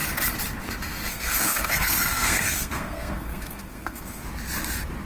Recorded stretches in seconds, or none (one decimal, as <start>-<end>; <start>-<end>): 0.0-1.1; 4.2-5.1